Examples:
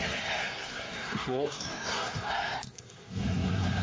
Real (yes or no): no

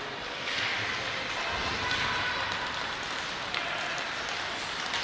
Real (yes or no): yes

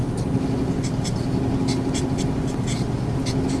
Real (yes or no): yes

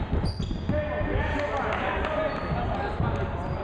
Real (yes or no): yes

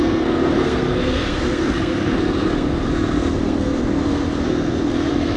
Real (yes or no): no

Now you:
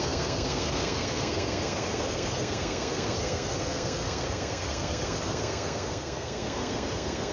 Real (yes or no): no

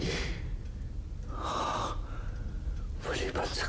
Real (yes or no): yes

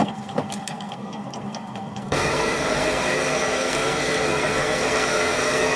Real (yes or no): no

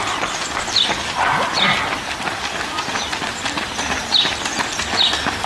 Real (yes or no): yes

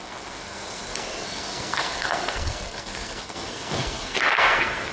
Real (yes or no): no